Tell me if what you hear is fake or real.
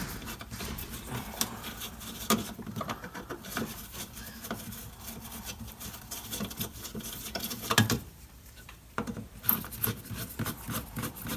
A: fake